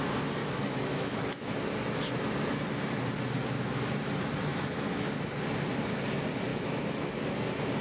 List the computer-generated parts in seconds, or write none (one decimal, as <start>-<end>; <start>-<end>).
0.4-1.5; 4.5-5.1; 6.5-7.2